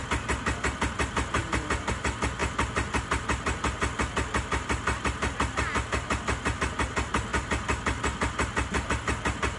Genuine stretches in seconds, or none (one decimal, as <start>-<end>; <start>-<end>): 0.0-9.6